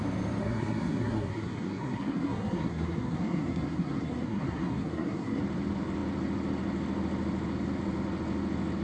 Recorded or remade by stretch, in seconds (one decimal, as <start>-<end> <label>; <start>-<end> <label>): 0.0-0.4 recorded; 0.4-5.4 remade; 5.4-8.8 recorded